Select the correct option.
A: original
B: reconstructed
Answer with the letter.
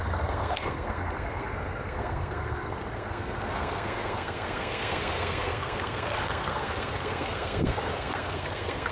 B